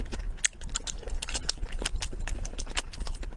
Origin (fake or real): real